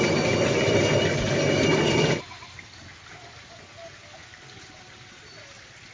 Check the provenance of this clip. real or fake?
real